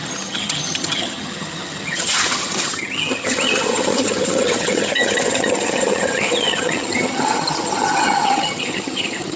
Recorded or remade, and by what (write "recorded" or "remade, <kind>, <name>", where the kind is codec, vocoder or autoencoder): remade, vocoder, HiFi-GAN